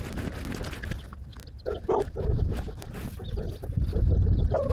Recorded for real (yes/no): yes